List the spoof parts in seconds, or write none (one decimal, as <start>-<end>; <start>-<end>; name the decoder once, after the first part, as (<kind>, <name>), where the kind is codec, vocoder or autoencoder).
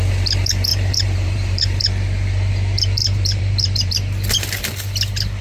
0.7-1.8 (vocoder, BigVGAN v2); 3.0-3.9